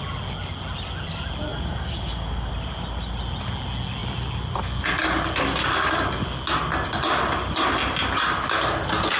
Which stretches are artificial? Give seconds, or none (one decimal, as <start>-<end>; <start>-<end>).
1.5-2.5